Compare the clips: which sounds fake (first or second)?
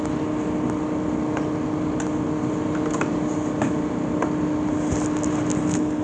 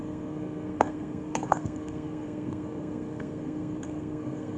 second